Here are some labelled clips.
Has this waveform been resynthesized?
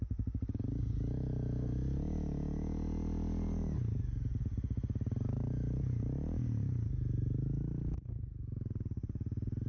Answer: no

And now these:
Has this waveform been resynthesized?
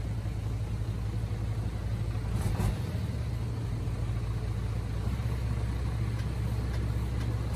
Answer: no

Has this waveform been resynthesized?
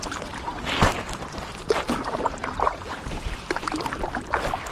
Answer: yes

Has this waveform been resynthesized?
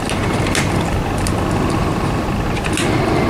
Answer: no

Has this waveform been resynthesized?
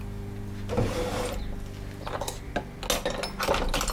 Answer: no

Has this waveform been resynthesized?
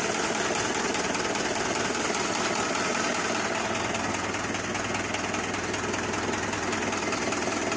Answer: no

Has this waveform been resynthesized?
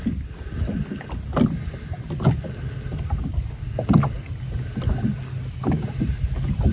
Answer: no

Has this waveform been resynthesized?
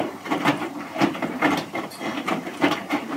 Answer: yes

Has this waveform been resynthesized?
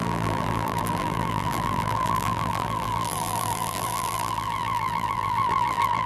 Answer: yes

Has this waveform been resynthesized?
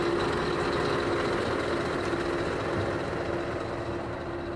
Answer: no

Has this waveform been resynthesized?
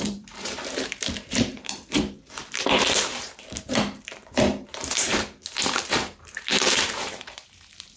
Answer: yes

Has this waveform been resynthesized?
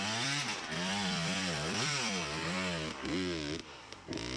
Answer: yes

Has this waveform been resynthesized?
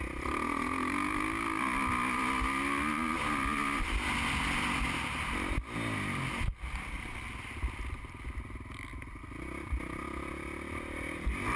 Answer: no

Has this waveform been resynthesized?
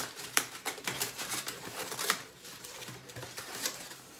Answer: yes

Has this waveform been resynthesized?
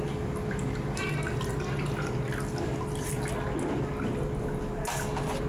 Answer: no